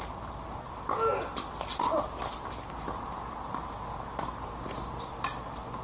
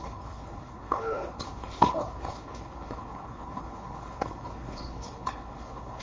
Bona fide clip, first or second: first